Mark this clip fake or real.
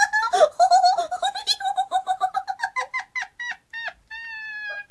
real